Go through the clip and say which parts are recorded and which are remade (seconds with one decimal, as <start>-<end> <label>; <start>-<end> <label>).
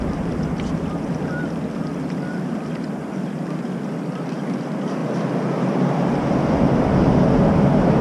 0.0-8.0 recorded